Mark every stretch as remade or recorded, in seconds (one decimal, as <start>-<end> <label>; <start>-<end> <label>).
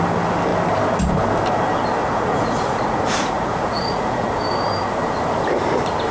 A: 0.0-2.0 recorded; 2.0-4.4 remade; 4.4-6.1 recorded